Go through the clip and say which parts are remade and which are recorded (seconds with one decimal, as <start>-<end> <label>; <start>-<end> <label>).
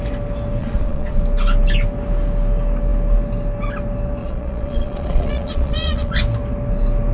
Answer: 0.0-0.6 recorded; 0.6-1.2 remade; 1.2-4.2 recorded; 4.2-6.2 remade; 6.2-7.1 recorded